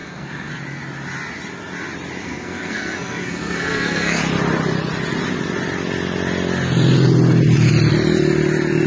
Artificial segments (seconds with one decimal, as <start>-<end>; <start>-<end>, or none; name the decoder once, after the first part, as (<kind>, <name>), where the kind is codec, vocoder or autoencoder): 0.0-0.5 (codec, SNAC); 2.2-4.2